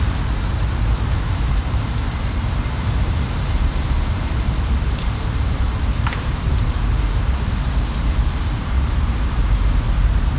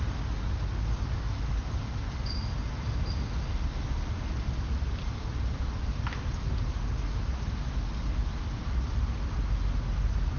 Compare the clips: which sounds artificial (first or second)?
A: first